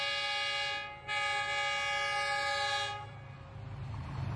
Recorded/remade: recorded